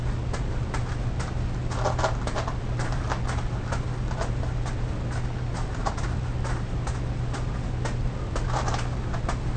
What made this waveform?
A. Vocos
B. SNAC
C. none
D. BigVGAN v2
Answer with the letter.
C